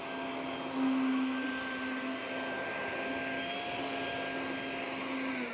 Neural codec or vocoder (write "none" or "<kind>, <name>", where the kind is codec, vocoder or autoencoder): none